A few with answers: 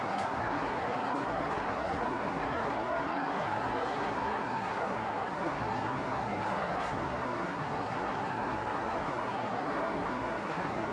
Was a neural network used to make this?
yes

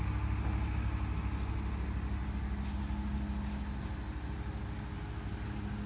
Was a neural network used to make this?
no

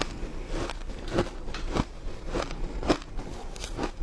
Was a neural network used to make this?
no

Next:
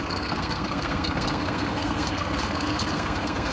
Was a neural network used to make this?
yes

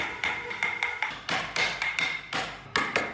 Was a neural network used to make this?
no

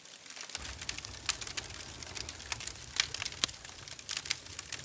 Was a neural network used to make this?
no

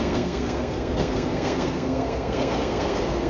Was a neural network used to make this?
yes